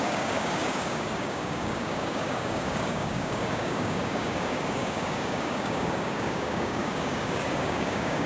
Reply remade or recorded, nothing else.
remade